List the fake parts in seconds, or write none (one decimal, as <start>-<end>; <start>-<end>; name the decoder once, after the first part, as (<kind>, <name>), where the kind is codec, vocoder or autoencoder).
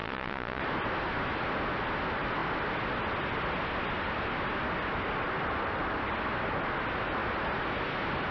0.0-0.6 (vocoder, Vocos)